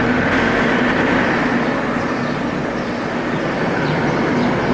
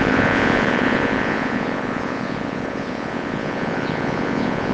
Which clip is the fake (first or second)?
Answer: second